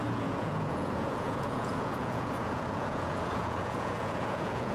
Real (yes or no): no